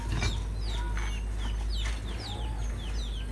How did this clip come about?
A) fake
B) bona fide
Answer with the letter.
B